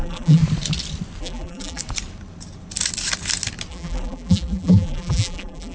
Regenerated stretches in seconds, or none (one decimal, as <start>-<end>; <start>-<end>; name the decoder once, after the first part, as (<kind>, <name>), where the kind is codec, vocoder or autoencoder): 0.0-0.4 (vocoder, BigVGAN v2); 1.2-1.8; 3.7-5.7